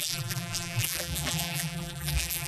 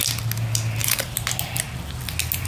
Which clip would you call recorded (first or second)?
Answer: second